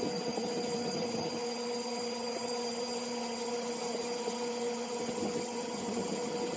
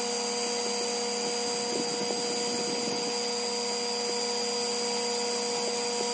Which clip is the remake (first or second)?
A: first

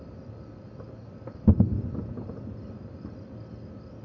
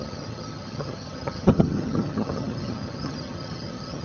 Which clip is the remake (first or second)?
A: second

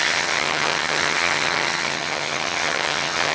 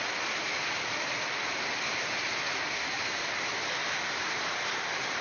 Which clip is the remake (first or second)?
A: first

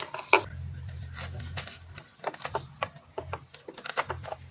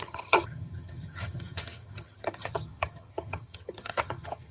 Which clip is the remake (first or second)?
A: second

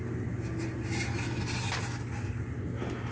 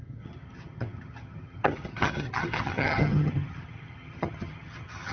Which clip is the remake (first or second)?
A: second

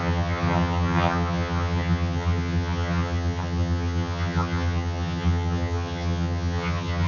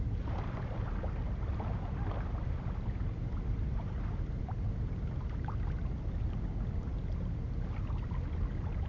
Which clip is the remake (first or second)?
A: first